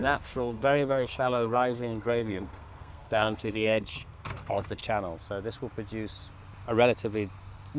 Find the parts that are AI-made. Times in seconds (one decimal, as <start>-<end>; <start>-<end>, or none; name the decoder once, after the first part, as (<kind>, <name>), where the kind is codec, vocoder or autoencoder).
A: 0.0-4.8 (codec, SNAC)